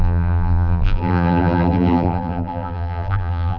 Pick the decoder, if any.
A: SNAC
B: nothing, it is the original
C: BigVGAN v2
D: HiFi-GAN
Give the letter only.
C